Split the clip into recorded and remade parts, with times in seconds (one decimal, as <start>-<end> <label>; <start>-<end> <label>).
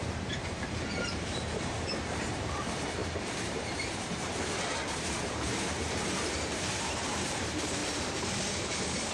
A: 0.0-7.8 remade; 7.8-9.1 recorded